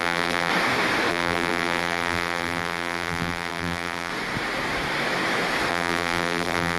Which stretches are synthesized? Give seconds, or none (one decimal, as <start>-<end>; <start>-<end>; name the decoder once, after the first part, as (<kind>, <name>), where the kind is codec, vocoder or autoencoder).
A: 0.0-0.5 (vocoder, BigVGAN v2); 1.1-4.1; 5.7-6.8